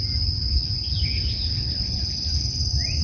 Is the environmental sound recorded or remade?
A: recorded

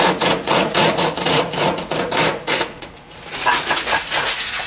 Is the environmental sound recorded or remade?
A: remade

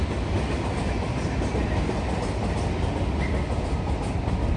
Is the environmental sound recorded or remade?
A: recorded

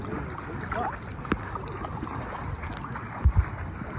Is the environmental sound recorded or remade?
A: recorded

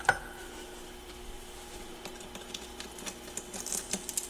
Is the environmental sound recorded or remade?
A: recorded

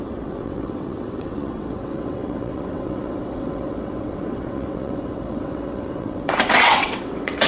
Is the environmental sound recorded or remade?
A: remade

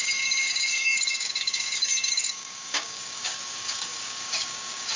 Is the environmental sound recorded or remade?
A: remade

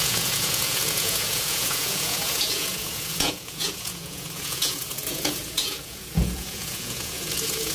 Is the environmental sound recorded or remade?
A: remade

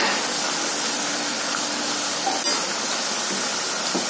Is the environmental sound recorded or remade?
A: recorded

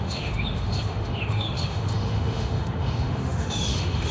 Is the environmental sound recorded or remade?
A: remade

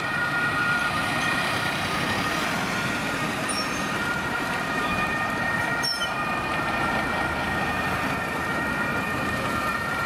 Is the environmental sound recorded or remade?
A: remade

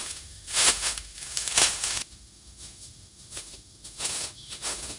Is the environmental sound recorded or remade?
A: remade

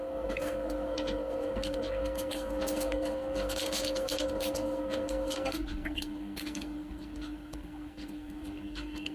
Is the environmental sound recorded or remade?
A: remade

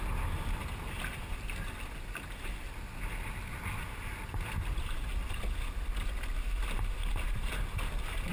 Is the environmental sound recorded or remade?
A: recorded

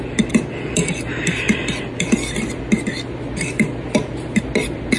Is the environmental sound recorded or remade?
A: recorded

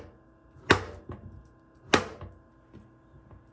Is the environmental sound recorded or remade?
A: recorded